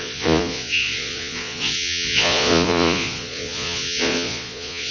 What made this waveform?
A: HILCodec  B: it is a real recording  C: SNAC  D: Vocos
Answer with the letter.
D